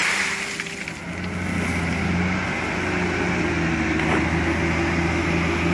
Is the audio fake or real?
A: real